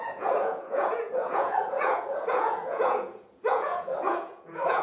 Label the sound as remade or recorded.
remade